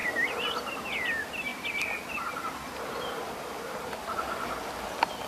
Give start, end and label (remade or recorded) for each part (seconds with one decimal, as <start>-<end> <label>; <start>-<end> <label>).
0.0-1.5 recorded; 1.5-4.6 remade; 4.6-5.3 recorded